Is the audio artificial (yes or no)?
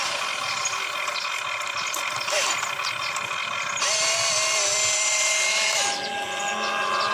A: no